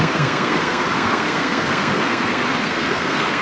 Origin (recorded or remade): remade